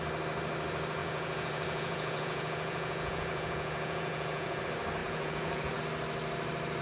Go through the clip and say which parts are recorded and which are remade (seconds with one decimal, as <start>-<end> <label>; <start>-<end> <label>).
0.0-1.0 recorded; 1.0-4.6 remade; 4.6-5.0 recorded; 5.0-5.8 remade; 5.8-6.8 recorded